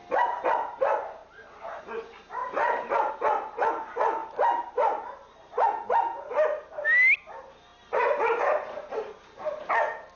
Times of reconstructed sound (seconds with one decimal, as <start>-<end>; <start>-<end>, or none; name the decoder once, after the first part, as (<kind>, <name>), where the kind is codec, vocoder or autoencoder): 1.2-1.8 (vocoder, BigVGAN v2); 2.4-3.1; 7.7-9.7